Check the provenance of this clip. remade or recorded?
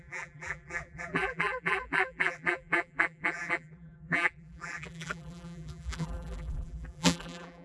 remade